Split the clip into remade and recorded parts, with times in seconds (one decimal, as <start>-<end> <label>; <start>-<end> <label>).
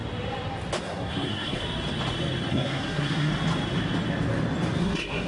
0.0-0.8 recorded; 0.8-1.6 remade; 1.6-2.5 recorded; 2.5-3.3 remade; 3.3-4.8 recorded; 4.8-5.3 remade